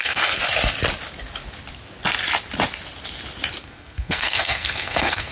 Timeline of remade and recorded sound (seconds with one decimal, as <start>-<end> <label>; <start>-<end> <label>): 0.0-0.4 remade; 0.4-3.6 recorded; 3.6-5.3 remade